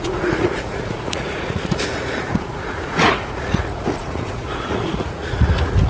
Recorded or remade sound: remade